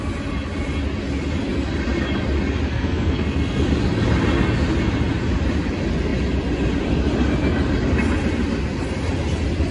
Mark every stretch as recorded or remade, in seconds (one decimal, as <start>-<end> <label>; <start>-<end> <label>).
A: 0.0-2.7 recorded; 2.7-3.6 remade; 3.6-9.7 recorded